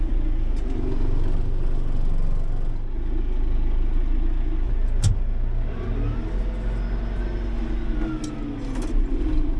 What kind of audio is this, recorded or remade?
recorded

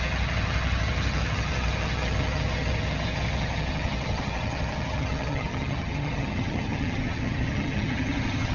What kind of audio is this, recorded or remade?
remade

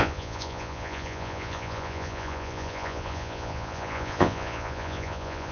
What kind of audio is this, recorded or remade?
remade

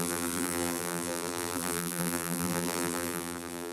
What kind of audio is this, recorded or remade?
remade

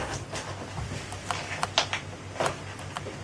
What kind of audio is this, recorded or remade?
recorded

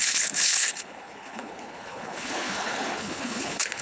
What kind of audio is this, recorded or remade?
remade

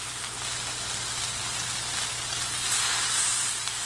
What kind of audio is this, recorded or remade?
recorded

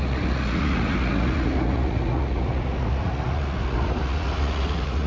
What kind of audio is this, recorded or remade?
remade